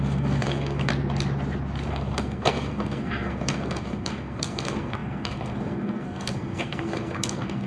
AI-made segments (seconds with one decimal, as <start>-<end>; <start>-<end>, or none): 0.0-0.9; 1.9-7.7